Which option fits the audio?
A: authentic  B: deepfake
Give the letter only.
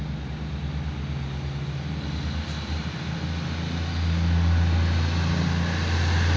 A